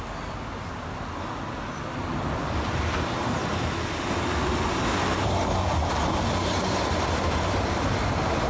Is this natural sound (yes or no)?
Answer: yes